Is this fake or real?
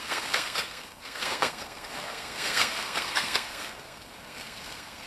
fake